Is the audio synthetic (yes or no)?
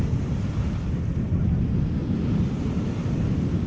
no